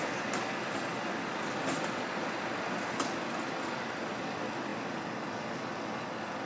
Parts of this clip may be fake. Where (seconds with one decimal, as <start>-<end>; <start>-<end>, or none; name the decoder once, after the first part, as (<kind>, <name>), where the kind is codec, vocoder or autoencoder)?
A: none